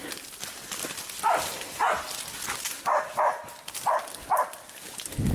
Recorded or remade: recorded